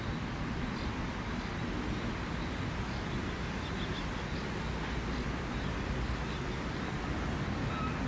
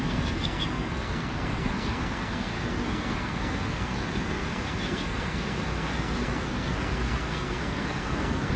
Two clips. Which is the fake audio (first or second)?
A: second